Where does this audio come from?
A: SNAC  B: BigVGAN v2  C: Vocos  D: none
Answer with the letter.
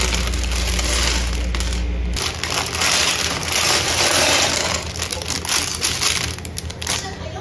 D